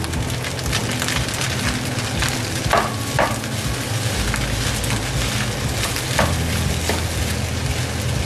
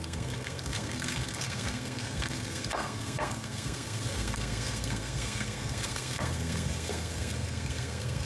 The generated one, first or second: second